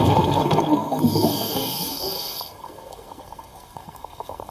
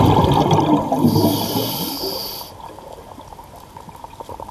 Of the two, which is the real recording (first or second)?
second